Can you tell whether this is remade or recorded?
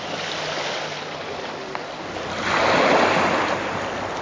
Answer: recorded